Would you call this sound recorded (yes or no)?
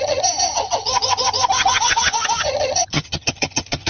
no